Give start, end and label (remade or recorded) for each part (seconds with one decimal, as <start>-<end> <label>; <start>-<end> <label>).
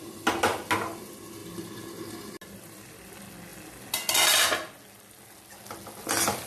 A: 0.0-6.5 recorded